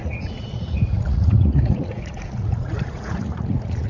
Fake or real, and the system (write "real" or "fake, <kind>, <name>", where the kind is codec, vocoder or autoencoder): fake, vocoder, Vocos